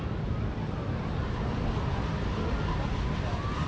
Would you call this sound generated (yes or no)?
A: no